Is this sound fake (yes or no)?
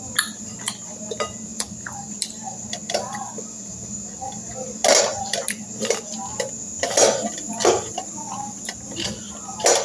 no